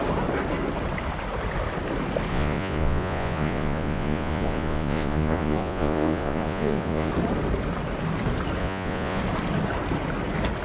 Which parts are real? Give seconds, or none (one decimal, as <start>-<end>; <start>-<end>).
0.0-2.3; 7.1-8.6; 9.2-10.6